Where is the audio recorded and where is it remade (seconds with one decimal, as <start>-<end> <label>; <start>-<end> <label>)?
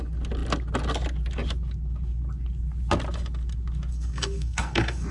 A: 0.0-3.9 recorded; 3.9-5.1 remade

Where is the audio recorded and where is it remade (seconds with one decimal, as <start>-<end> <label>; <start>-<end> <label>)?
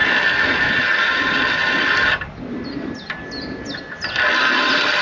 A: 0.0-5.0 recorded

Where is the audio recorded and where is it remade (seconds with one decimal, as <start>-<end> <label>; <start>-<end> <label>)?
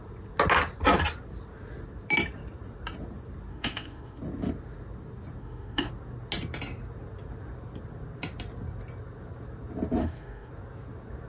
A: 0.0-3.5 recorded; 3.5-4.2 remade; 4.2-5.4 recorded; 5.4-5.9 remade; 5.9-10.0 recorded; 10.0-10.5 remade; 10.5-11.3 recorded